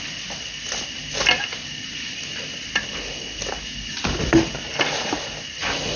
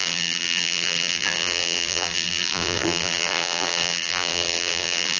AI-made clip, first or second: second